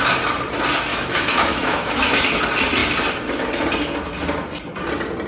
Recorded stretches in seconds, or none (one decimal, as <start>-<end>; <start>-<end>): 0.0-0.9; 2.4-5.3